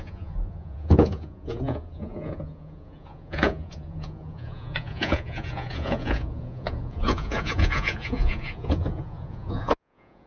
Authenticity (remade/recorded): remade